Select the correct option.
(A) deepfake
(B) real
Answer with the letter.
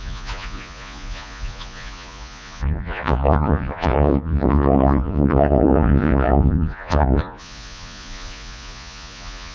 A